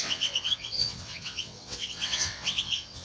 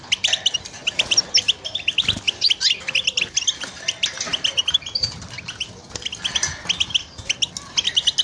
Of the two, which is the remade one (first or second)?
first